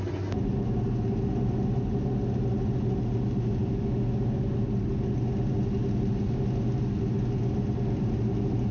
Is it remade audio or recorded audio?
recorded